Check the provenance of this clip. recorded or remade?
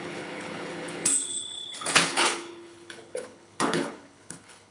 remade